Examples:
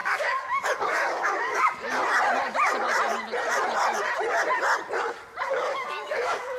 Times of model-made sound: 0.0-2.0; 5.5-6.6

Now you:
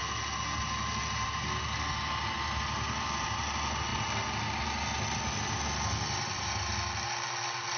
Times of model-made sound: none

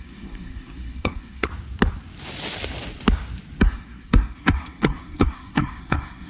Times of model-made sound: 0.0-1.5; 3.6-6.3